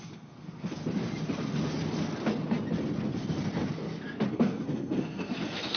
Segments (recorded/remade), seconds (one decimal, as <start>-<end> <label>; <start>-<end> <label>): 0.0-0.8 remade; 0.8-4.3 recorded; 4.3-5.8 remade